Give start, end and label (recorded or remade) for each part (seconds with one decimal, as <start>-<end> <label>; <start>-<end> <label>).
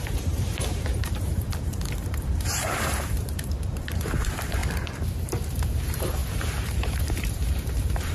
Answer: 0.0-4.6 remade; 4.6-5.7 recorded; 5.7-8.1 remade